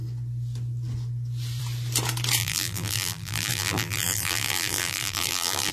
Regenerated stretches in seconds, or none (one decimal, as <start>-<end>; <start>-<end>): 2.4-5.7